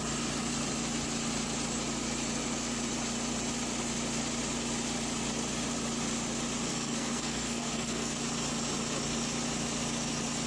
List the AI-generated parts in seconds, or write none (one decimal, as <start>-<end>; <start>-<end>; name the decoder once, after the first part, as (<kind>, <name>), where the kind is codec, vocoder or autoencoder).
6.7-8.2 (codec, SNAC)